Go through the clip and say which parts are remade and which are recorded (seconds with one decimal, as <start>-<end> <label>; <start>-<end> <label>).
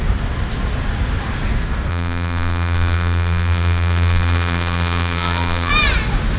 0.0-1.9 recorded; 1.9-5.7 remade; 5.7-6.4 recorded